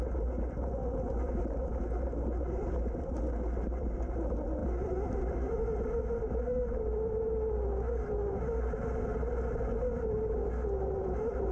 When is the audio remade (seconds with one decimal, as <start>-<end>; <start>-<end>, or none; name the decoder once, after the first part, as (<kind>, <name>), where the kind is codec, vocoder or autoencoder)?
none